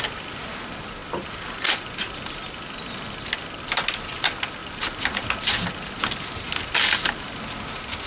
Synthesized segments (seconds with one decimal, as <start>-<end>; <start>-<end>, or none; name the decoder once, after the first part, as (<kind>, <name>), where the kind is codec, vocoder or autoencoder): none